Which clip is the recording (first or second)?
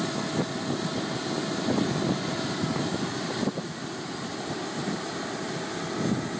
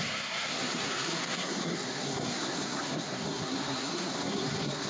first